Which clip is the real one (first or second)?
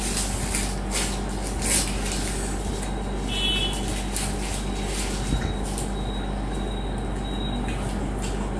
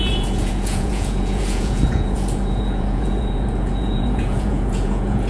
first